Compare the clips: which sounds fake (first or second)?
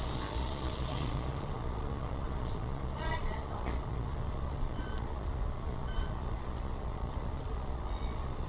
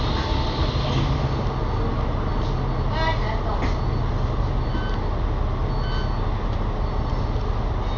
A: first